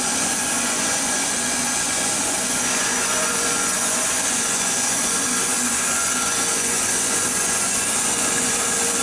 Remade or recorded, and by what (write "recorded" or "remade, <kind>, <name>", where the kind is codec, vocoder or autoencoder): remade, vocoder, Vocos